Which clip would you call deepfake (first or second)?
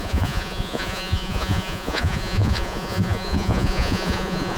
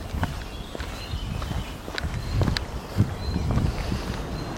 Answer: first